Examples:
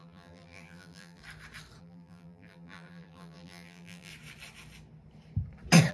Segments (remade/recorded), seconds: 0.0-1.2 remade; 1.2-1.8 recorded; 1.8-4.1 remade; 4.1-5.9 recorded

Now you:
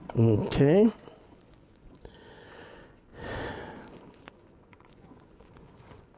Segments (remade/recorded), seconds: 0.0-0.4 remade; 0.4-1.2 recorded; 1.2-3.1 remade; 3.1-3.9 recorded; 3.9-6.2 remade

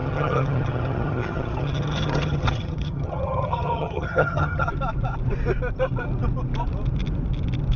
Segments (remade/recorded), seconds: 0.0-4.7 remade; 4.7-7.8 recorded

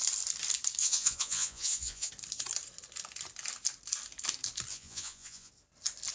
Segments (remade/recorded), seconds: 0.0-0.8 recorded; 0.8-2.1 remade; 2.1-4.7 recorded; 4.7-5.5 remade; 5.5-6.1 recorded